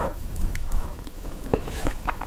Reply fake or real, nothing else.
fake